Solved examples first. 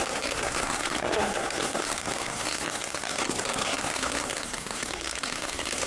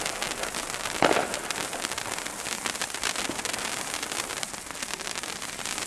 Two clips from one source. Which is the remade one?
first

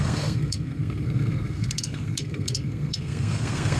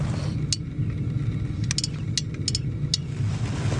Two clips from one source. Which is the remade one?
first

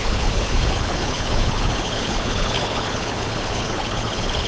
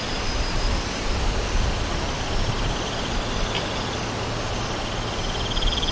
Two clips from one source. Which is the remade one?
first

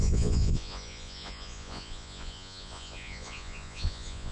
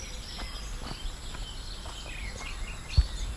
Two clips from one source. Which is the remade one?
first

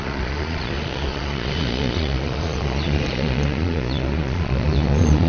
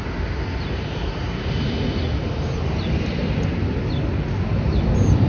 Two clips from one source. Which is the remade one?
first